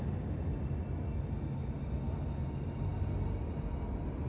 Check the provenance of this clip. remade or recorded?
recorded